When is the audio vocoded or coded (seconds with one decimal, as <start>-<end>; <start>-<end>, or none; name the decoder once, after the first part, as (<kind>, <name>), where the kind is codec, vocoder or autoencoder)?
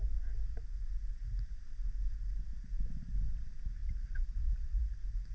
3.8-4.8 (vocoder, BigVGAN v2)